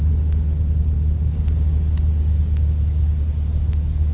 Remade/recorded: recorded